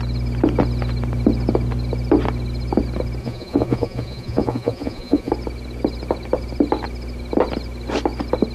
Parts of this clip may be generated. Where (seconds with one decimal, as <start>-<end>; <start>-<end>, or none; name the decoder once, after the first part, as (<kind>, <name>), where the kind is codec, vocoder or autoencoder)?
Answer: 3.2-5.3 (vocoder, Vocos)